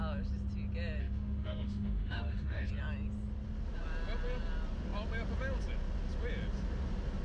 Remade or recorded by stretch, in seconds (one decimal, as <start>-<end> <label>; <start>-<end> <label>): 0.0-1.0 recorded; 1.0-2.7 remade; 2.7-7.2 recorded